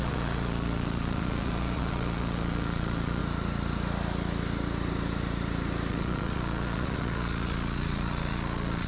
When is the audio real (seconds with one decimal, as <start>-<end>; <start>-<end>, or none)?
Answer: 3.2-5.9